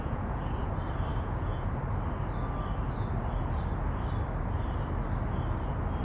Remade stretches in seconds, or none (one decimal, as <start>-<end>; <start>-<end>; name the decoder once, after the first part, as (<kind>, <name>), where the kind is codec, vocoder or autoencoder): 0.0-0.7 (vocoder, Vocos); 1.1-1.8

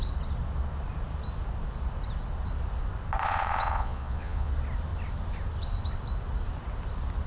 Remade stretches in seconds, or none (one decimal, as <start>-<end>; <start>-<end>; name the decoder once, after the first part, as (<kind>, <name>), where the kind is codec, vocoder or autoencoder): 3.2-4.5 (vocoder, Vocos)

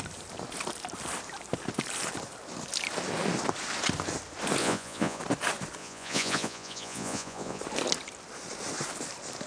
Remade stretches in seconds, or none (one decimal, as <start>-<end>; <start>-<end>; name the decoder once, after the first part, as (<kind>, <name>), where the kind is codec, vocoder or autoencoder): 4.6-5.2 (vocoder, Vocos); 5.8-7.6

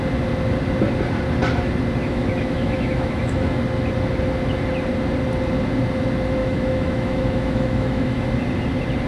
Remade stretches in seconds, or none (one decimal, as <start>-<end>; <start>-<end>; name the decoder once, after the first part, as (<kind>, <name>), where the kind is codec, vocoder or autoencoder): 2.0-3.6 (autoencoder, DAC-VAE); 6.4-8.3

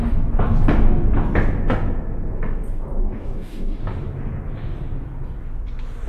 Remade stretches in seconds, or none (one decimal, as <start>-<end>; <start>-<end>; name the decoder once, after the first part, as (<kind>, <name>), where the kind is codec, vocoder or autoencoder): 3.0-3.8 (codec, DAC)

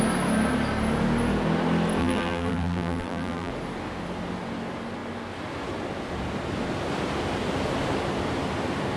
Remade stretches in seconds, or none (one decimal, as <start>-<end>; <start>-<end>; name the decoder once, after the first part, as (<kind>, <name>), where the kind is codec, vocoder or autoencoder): 2.0-3.5 (vocoder, BigVGAN v2)

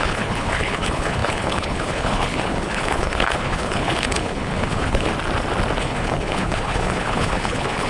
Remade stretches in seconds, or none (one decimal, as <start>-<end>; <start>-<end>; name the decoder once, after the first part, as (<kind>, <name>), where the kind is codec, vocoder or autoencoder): 0.0-5.1 (codec, HILCodec); 5.8-7.9

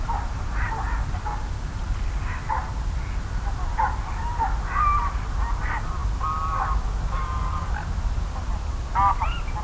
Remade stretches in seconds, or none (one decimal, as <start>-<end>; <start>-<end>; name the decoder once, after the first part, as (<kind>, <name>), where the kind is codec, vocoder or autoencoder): none